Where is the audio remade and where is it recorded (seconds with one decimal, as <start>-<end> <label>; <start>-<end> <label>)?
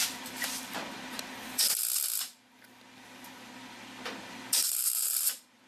0.0-5.7 recorded